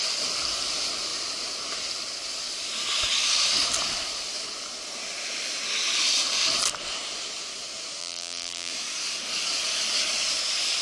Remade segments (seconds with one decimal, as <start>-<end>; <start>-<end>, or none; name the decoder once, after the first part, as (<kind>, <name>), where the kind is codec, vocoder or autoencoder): 8.0-8.7 (vocoder, BigVGAN v2)

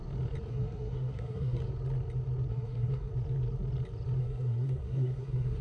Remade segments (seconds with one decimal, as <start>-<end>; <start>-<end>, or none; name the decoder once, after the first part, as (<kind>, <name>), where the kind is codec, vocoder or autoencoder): 0.5-1.6 (codec, SNAC); 2.5-3.1; 4.2-5.6

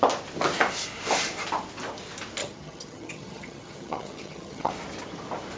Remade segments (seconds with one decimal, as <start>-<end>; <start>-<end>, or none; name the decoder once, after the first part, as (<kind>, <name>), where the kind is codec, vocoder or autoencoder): 2.4-4.7 (vocoder, HiFi-GAN)

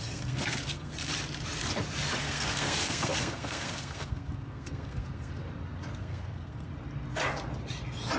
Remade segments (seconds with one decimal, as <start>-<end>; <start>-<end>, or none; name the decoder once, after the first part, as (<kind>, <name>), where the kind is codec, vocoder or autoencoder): 0.0-1.1 (codec, SNAC); 2.2-5.4; 6.0-6.7